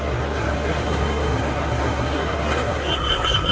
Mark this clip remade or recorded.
remade